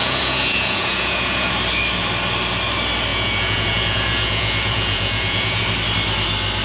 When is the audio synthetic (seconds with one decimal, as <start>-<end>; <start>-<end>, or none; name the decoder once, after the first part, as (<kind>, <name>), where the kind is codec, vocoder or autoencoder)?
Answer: 0.0-1.5 (vocoder, Vocos); 3.1-5.6

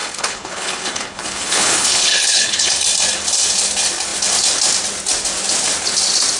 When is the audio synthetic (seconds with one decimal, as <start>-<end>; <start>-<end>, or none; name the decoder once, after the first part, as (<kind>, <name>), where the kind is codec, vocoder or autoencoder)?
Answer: 0.0-2.7 (codec, HILCodec)

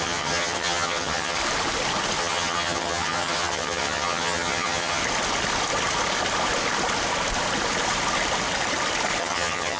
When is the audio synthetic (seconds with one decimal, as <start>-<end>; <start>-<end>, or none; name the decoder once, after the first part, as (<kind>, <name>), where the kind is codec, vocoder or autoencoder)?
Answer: 0.0-1.4 (vocoder, HiFi-GAN); 2.2-5.0; 9.2-9.8

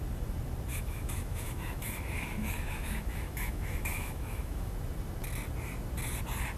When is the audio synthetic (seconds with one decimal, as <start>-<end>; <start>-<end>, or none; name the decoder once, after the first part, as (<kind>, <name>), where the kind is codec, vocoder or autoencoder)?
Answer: 0.7-4.7 (autoencoder, DAC-VAE)

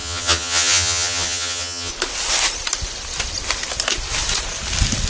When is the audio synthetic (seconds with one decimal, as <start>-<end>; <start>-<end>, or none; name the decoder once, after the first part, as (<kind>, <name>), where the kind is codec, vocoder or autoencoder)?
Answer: 0.0-1.9 (vocoder, HiFi-GAN)